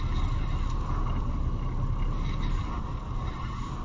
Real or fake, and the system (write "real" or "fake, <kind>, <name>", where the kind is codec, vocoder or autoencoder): real